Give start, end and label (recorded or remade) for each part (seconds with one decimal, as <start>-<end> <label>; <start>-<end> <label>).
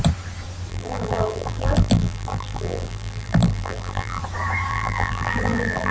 0.0-0.7 recorded; 0.7-4.2 remade; 4.2-4.7 recorded; 4.7-5.9 remade